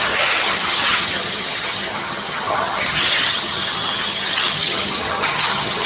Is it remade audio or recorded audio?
remade